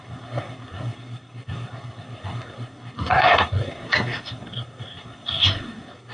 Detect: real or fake fake